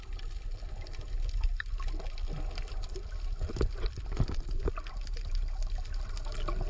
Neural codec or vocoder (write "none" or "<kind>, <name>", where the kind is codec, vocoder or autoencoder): none